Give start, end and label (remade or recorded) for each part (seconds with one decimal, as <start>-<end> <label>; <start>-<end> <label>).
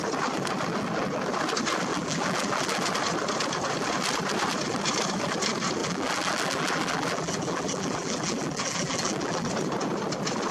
0.0-1.9 recorded; 1.9-2.8 remade; 2.8-5.8 recorded; 5.8-9.5 remade; 9.5-10.5 recorded